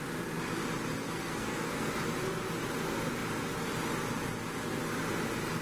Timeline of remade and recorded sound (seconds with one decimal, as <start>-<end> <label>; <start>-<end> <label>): 0.0-0.9 recorded; 0.9-1.9 remade; 1.9-5.6 recorded